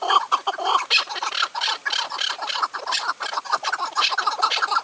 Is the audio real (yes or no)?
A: yes